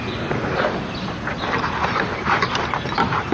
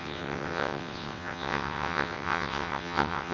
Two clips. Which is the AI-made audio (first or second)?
second